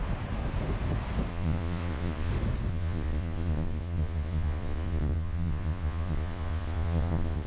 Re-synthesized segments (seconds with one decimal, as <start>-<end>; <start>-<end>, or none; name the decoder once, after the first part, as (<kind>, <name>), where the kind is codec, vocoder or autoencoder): 1.3-2.3 (vocoder, Vocos); 2.7-7.5